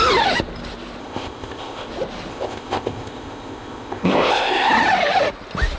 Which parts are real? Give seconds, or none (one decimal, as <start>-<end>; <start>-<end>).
0.0-1.0; 1.9-2.3; 4.7-5.8